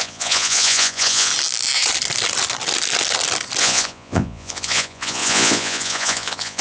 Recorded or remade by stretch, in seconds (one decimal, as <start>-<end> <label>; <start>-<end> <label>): 0.0-1.3 remade; 1.3-3.6 recorded; 3.6-6.6 remade